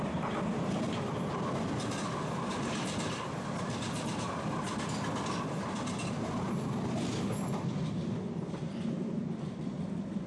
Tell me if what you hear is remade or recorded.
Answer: recorded